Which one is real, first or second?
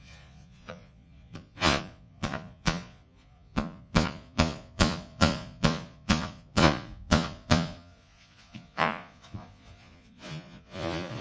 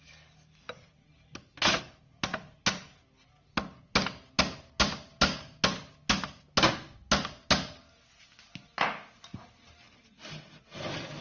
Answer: second